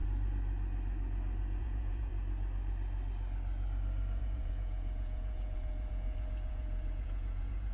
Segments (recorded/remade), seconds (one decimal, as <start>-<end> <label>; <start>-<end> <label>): 0.0-1.6 recorded; 1.6-2.1 remade; 2.1-4.2 recorded; 4.2-7.7 remade